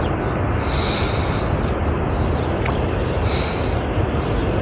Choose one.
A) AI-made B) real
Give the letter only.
B